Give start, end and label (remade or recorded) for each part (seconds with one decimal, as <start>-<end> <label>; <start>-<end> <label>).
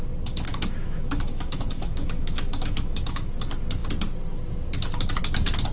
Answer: 0.0-0.5 recorded; 0.5-3.3 remade; 3.3-5.7 recorded